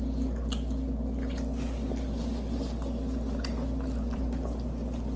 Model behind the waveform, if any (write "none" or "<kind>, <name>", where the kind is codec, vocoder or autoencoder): none